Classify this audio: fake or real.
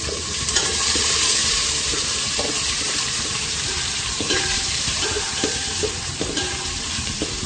fake